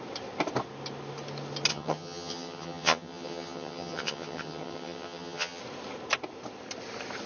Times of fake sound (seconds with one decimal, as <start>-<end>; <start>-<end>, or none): 1.7-5.6